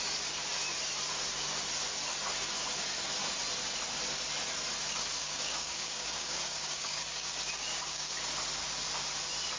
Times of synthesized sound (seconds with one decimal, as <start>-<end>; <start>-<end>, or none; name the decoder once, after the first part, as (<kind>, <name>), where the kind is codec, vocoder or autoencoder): 5.2-8.1 (codec, DAC)